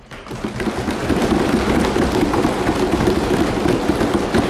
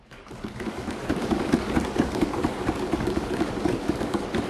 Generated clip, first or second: second